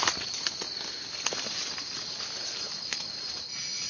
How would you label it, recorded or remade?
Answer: recorded